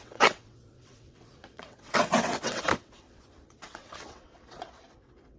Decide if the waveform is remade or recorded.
remade